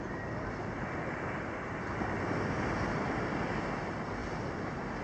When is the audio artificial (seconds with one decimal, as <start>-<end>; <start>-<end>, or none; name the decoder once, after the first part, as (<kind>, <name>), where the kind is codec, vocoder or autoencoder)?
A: none